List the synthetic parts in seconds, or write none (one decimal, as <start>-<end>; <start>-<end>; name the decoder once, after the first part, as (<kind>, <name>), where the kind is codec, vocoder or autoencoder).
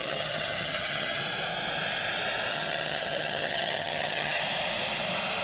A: 0.0-1.2 (vocoder, HiFi-GAN); 2.5-4.4